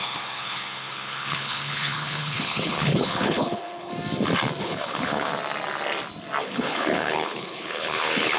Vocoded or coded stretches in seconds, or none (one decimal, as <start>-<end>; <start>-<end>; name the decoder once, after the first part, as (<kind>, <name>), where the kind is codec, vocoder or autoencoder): 0.0-3.9 (codec, HILCodec); 4.6-5.3; 6.4-8.4